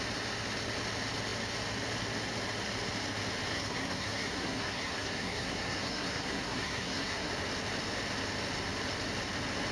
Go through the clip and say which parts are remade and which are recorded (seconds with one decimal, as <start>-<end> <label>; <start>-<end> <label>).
0.0-3.5 recorded; 3.5-7.3 remade; 7.3-9.7 recorded